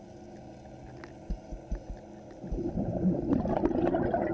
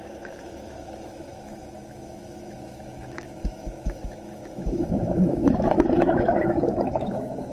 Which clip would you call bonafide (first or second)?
first